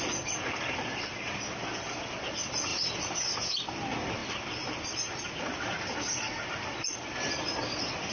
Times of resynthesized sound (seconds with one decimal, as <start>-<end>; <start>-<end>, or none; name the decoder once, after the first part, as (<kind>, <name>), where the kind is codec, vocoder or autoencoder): none